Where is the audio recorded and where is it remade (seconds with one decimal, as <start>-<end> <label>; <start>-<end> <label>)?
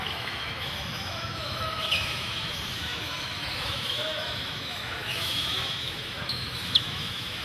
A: 0.0-7.4 remade